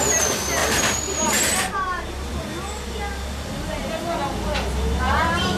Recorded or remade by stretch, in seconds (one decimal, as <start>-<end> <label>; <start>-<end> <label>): 0.0-5.6 recorded

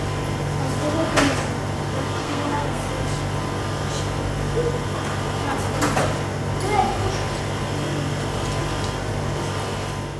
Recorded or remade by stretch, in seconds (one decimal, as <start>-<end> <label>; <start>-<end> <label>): 0.0-2.2 recorded; 2.2-2.9 remade; 2.9-10.2 recorded

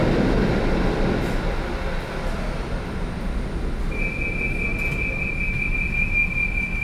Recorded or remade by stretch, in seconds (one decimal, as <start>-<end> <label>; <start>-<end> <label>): 0.0-6.8 recorded

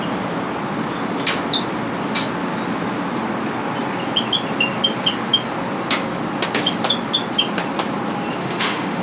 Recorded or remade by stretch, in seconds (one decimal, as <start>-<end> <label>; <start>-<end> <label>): 0.0-8.4 recorded; 8.4-9.0 remade

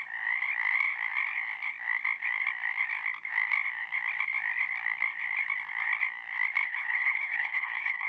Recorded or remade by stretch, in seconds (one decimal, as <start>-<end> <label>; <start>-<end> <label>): 0.0-6.6 recorded; 6.6-8.1 remade